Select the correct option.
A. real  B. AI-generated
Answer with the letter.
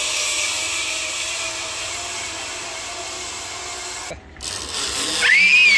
A